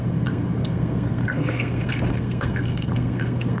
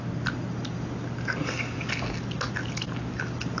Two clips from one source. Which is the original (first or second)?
second